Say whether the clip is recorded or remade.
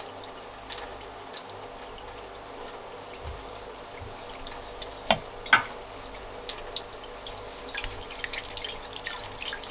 recorded